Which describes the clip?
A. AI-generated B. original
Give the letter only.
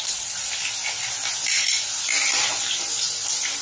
B